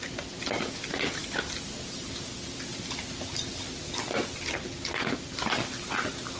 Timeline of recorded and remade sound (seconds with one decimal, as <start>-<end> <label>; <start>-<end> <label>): 0.0-6.4 recorded